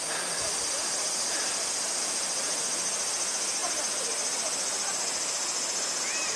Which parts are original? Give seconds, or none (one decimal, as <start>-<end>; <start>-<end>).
0.0-6.4